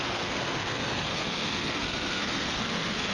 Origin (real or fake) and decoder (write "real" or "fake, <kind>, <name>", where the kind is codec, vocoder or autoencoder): fake, codec, SNAC